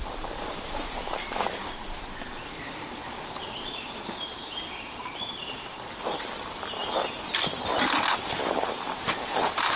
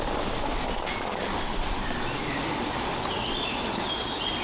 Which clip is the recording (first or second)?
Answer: second